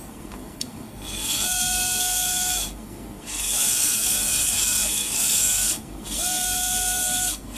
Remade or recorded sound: remade